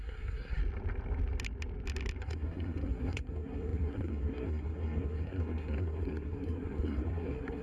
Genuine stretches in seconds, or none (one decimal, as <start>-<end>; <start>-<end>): 0.6-2.2